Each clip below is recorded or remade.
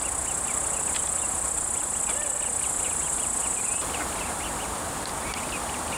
recorded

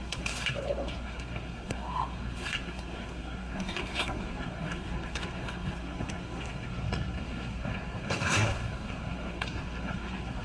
remade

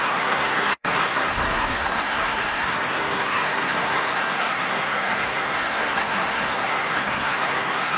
remade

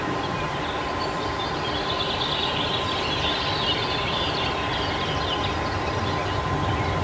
recorded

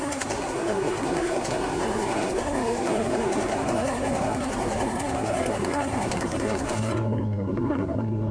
remade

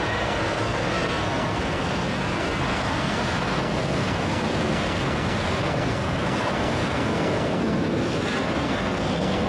remade